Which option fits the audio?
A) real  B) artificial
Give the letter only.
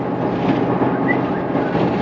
A